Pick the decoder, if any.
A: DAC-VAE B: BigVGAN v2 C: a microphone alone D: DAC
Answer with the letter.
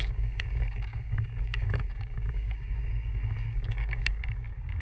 D